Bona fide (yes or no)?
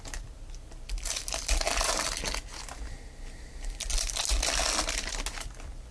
yes